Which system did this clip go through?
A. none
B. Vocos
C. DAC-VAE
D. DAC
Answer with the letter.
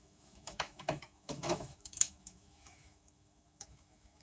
C